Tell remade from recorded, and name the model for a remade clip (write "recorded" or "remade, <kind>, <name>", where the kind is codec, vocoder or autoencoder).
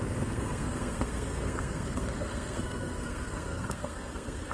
remade, codec, SNAC